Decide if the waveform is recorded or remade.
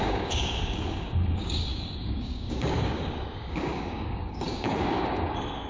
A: remade